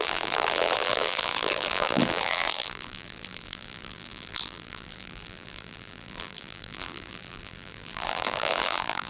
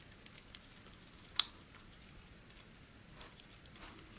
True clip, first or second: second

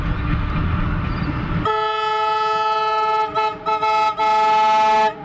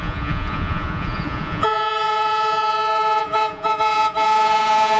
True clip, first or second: first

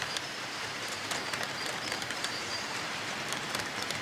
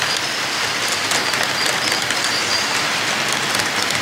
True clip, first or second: second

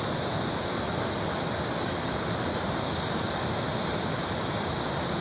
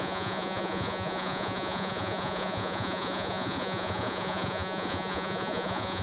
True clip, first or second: first